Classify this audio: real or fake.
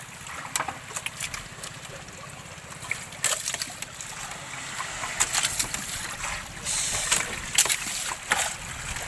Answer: real